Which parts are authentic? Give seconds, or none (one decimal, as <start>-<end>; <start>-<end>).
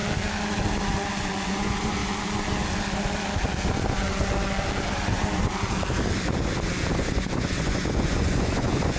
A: 0.0-1.2; 2.0-6.9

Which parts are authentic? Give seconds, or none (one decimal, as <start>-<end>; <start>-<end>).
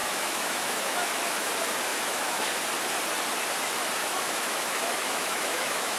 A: 1.5-1.9; 2.5-4.0